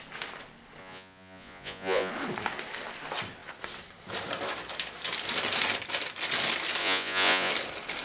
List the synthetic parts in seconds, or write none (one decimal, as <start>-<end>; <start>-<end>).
0.8-2.1; 6.8-7.5

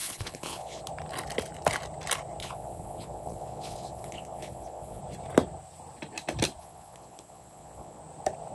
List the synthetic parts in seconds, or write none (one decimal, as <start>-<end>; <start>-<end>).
0.0-0.8; 2.4-5.0; 6.6-8.0